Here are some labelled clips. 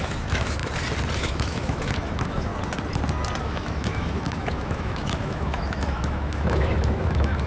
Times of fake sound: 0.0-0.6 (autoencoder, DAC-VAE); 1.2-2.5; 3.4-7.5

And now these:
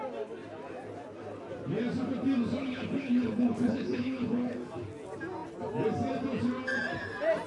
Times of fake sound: 2.6-4.5 (codec, HILCodec)

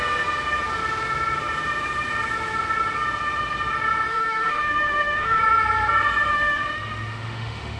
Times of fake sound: 4.1-5.4 (autoencoder, DAC-VAE); 6.3-7.8

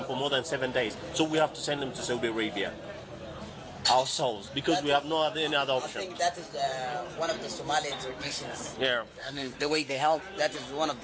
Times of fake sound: 9.2-10.2 (codec, SNAC)

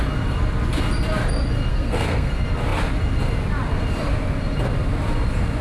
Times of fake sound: 1.7-2.3 (codec, SNAC)

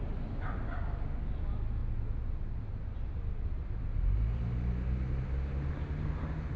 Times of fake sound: none

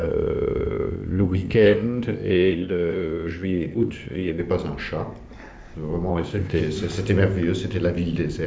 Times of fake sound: 0.0-4.4 (codec, ZipCodec); 6.1-6.6